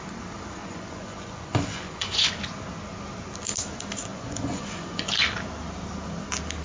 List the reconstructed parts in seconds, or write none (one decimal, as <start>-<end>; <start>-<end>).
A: 0.6-2.3; 4.1-5.1